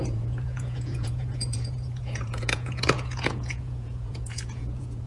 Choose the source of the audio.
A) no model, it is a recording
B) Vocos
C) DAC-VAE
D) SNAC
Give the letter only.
B